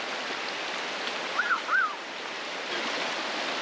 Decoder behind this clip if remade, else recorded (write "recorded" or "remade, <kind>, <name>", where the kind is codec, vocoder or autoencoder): recorded